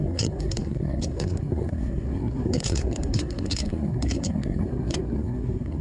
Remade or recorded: remade